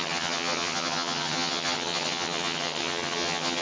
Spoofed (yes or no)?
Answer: yes